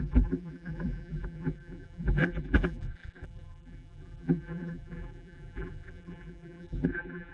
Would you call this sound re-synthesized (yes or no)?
yes